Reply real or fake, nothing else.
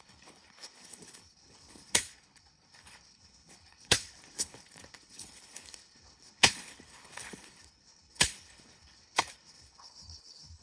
fake